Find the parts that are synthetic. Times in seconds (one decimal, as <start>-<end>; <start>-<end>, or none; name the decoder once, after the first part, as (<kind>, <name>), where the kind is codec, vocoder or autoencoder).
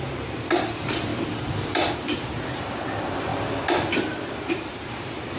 0.0-1.1 (vocoder, BigVGAN v2); 1.6-3.3; 4.5-5.4